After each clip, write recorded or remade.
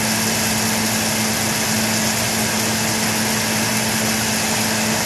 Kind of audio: recorded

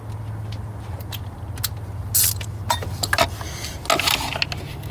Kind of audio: recorded